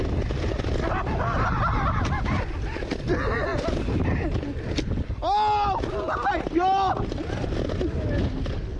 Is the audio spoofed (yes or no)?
no